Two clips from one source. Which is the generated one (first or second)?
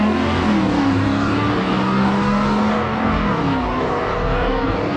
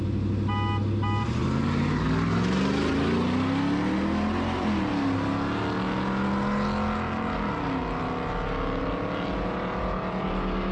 first